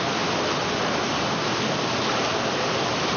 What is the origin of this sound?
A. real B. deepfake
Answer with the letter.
A